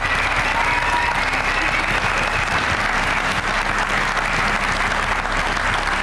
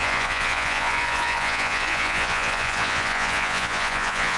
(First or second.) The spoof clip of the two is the second